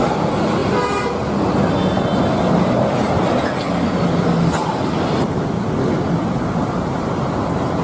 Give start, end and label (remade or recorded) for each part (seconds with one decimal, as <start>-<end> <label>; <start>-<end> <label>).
0.0-0.6 recorded; 0.6-1.3 remade; 1.3-4.6 recorded; 4.6-5.7 remade; 5.7-7.8 recorded